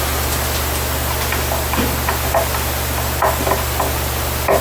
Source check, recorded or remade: recorded